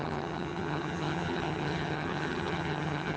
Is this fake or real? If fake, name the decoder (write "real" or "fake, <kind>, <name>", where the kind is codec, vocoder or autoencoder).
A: fake, vocoder, HiFi-GAN